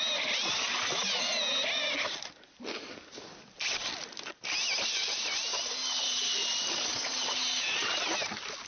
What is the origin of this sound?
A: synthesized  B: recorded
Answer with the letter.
B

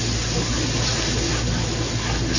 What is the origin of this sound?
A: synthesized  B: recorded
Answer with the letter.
B